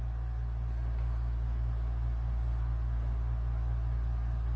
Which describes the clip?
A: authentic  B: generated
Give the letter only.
A